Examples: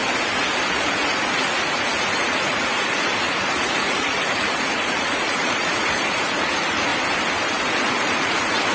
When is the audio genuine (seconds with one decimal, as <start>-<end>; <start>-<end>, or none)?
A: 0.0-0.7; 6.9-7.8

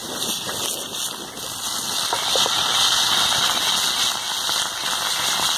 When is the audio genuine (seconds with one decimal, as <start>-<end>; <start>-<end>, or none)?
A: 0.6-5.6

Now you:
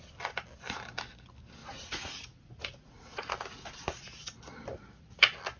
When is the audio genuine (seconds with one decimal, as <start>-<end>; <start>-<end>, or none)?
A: 0.0-1.6; 3.3-5.6

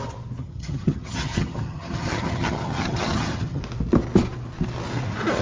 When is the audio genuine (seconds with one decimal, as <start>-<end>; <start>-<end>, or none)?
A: 0.0-0.4; 3.6-5.4

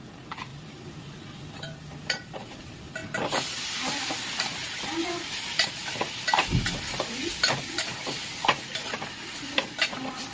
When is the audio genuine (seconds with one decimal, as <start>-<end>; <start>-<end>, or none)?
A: 0.0-10.3

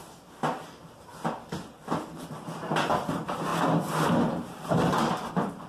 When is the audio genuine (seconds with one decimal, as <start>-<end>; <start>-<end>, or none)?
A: 0.0-0.6; 1.1-2.9